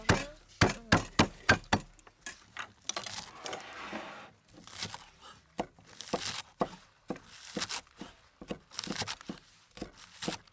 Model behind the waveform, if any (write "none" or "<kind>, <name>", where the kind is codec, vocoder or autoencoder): none